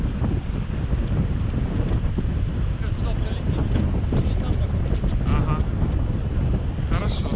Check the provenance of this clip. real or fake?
real